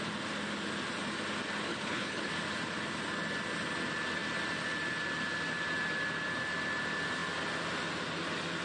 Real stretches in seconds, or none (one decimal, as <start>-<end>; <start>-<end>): 0.0-1.7; 2.3-8.6